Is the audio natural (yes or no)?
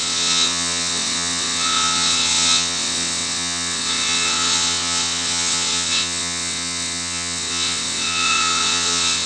no